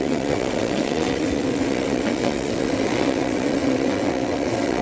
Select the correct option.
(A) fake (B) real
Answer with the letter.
A